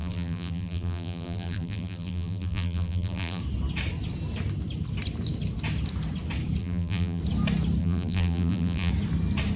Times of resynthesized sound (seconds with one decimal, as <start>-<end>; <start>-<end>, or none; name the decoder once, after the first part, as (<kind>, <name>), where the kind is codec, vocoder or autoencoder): 0.0-3.4 (vocoder, BigVGAN v2); 6.6-7.2; 7.8-8.9